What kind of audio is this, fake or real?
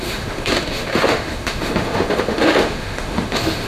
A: fake